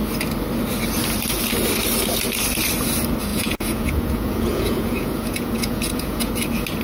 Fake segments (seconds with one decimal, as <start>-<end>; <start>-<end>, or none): 3.3-6.3